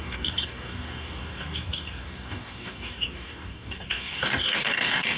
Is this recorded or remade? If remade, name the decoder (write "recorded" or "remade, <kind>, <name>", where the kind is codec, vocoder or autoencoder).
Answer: remade, codec, DAC